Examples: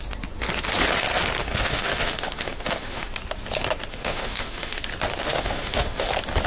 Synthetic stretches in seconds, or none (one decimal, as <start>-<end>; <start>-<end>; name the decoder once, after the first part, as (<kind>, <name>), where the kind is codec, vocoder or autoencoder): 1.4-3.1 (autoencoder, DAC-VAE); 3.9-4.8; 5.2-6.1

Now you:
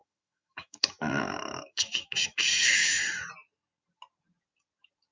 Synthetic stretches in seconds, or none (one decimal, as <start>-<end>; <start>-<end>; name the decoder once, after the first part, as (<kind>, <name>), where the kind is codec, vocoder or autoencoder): 0.0-3.0 (autoencoder, DAC-VAE)

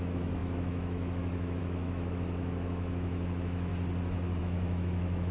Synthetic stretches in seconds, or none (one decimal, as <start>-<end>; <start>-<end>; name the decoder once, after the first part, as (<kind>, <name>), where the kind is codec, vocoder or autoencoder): 0.0-3.7 (autoencoder, DAC-VAE); 4.4-5.3

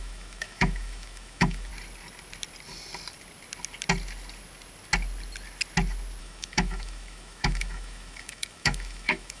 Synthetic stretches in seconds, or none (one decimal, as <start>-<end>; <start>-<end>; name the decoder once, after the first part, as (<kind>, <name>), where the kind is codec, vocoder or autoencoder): 0.0-1.7 (autoencoder, DAC-VAE); 6.2-9.4